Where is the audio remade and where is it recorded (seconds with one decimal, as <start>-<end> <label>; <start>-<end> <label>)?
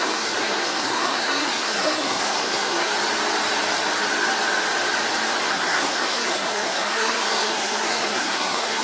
0.0-2.9 remade; 2.9-5.5 recorded; 5.5-8.8 remade